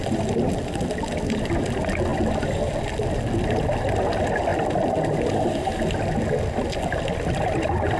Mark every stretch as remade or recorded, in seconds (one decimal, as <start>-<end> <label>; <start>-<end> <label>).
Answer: 0.0-8.0 recorded